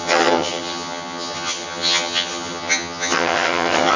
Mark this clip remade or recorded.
remade